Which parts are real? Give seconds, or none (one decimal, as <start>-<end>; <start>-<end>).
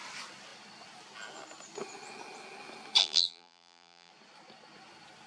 0.0-3.0; 4.1-5.3